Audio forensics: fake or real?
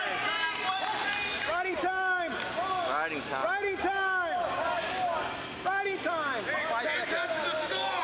real